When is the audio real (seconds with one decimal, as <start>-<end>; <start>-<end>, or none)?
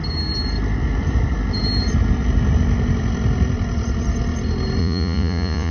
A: 0.0-4.8